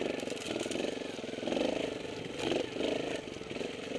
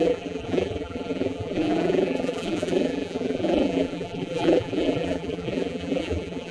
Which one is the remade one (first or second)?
second